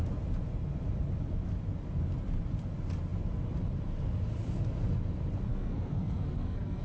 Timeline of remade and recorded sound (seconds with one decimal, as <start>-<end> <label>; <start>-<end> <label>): 0.0-5.5 recorded; 5.5-6.8 remade